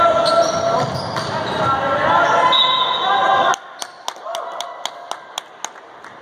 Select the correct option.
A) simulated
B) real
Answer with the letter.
B